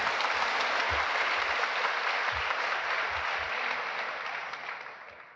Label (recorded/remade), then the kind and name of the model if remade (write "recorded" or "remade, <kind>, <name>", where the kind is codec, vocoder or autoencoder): recorded